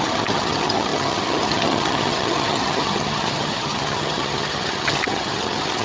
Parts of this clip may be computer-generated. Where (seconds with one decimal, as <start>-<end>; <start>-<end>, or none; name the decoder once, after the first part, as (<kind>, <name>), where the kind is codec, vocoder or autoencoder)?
0.0-5.8 (vocoder, HiFi-GAN)